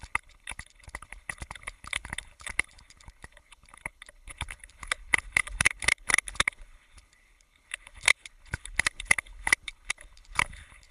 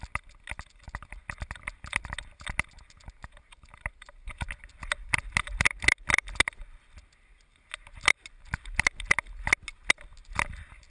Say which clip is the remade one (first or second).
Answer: first